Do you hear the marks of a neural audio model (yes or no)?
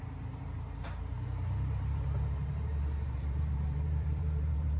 yes